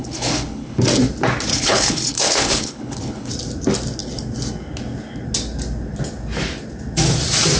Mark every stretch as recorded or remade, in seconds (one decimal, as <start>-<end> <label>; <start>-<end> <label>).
0.0-0.8 remade; 0.8-1.5 recorded; 1.5-3.3 remade; 3.3-7.6 recorded